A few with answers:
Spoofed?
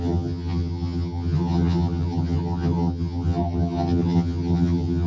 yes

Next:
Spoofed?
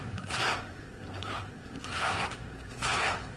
yes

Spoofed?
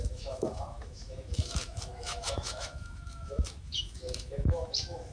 yes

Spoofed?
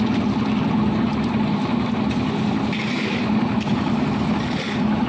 no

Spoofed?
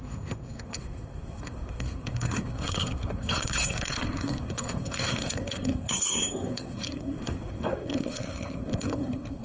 yes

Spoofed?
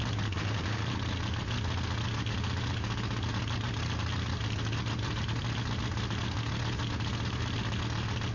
no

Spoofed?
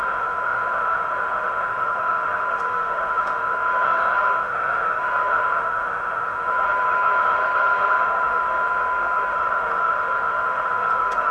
yes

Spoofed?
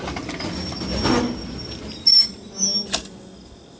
no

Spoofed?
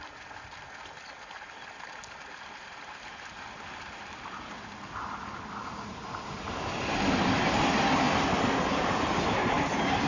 no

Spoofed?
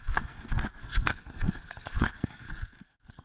yes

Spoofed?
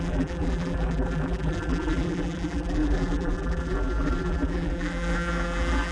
yes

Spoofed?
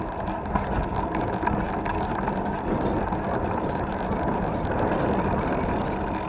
no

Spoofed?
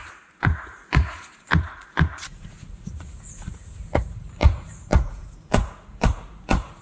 yes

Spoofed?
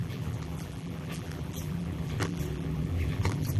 yes